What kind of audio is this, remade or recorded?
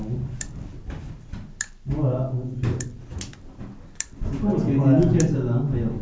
recorded